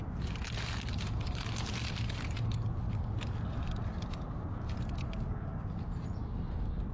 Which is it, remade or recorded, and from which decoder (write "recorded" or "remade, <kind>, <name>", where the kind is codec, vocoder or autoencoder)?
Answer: recorded